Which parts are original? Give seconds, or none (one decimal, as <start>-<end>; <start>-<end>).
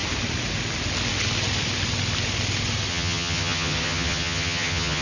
0.0-2.9